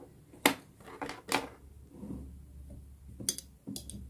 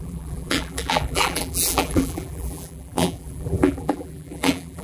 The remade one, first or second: second